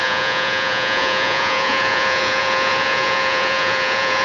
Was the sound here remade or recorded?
remade